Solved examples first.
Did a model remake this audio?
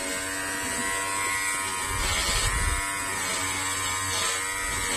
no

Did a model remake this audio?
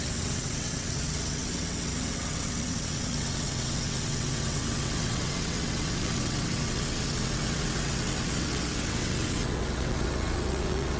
yes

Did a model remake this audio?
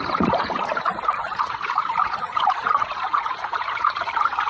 yes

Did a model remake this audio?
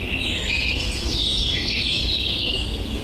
yes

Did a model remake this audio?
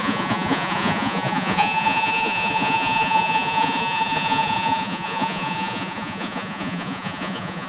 yes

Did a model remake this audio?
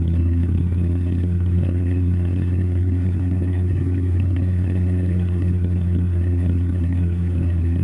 yes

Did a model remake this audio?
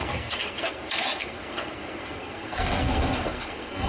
yes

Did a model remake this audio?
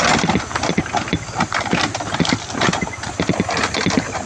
yes